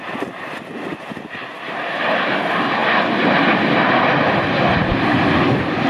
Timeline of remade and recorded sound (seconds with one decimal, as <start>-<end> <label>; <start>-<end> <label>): 0.0-5.9 recorded